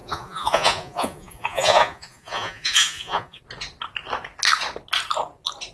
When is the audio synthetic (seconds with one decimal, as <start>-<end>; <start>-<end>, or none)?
0.0-3.4